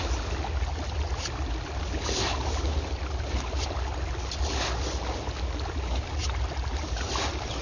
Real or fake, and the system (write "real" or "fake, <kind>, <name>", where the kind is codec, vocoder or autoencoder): real